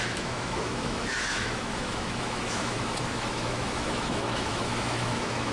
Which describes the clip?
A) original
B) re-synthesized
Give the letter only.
B